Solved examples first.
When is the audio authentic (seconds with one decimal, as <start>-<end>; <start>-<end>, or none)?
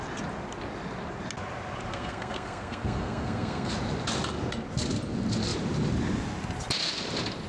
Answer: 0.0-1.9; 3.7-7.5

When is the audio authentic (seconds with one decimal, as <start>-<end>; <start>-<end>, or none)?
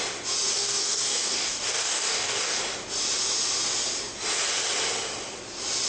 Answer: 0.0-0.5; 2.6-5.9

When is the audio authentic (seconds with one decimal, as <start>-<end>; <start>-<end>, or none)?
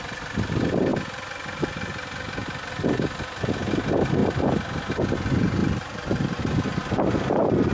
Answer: 0.0-5.6; 6.4-7.7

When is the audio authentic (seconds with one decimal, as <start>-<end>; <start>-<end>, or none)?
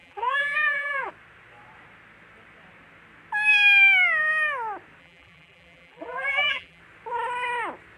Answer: 1.1-5.0; 6.8-8.0